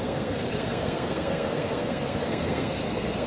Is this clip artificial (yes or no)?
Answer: yes